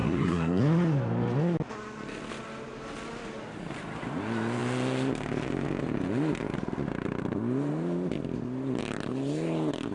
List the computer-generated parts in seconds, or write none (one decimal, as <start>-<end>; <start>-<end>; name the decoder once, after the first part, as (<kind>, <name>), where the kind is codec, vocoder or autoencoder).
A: 0.0-0.6 (codec, SNAC)